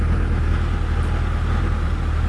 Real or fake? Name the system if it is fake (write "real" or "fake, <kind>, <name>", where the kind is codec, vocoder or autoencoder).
real